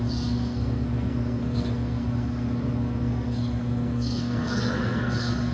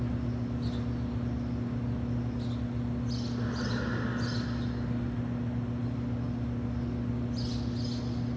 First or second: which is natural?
second